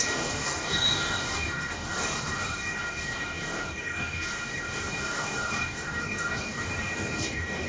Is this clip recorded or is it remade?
remade